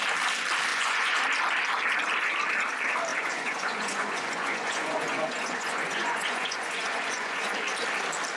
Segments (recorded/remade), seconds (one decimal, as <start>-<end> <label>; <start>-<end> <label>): 0.0-0.7 recorded; 0.7-1.2 remade; 1.2-3.1 recorded; 3.1-7.5 remade; 7.5-8.4 recorded

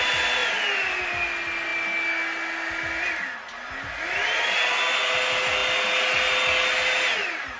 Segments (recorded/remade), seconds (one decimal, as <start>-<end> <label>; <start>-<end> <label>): 0.0-7.6 recorded

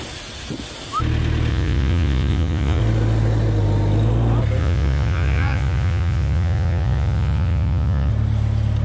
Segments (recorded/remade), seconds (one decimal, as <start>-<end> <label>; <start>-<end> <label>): 0.0-1.5 recorded; 1.5-2.8 remade; 2.8-4.6 recorded; 4.6-8.1 remade; 8.1-8.8 recorded

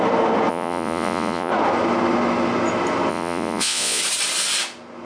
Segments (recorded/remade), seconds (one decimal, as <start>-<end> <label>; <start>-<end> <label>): 0.0-0.5 recorded; 0.5-1.5 remade; 1.5-3.1 recorded; 3.1-4.0 remade; 4.0-5.0 recorded

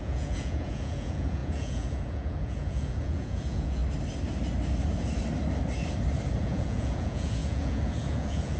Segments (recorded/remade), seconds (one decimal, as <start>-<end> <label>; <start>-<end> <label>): 0.0-3.8 remade; 3.8-6.4 recorded; 6.4-8.6 remade

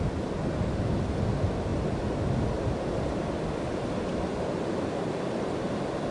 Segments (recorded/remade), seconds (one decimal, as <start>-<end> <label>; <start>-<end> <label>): 0.0-6.1 recorded